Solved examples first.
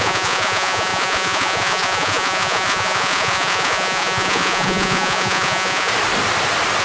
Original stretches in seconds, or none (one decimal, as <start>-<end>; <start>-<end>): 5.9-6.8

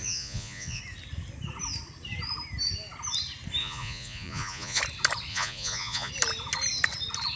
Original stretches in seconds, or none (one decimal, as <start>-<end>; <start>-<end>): 0.8-3.6; 4.8-5.3; 6.1-7.4

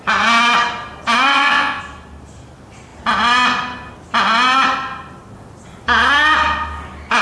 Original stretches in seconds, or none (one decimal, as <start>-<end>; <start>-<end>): 0.0-1.3; 1.8-7.2